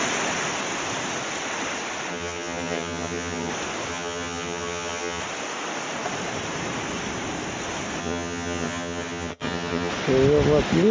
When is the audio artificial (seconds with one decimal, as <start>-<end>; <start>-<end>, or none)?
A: 2.1-3.5; 3.9-5.2; 8.0-9.9